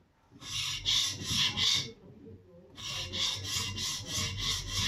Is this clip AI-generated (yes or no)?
no